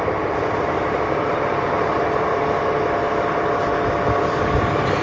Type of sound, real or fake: real